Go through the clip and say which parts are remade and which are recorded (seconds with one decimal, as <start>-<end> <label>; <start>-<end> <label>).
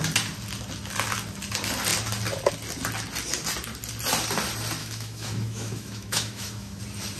0.0-4.8 recorded; 4.8-6.8 remade; 6.8-7.2 recorded